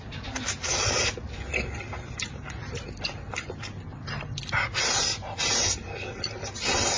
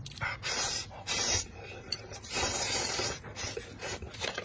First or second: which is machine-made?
second